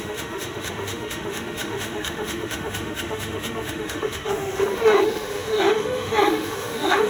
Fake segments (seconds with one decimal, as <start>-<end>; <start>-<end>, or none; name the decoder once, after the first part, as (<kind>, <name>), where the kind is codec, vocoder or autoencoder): 0.0-7.1 (autoencoder, DAC-VAE)